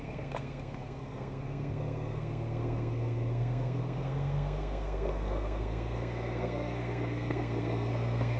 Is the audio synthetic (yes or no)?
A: yes